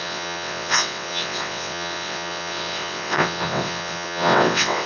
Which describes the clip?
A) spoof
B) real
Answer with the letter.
A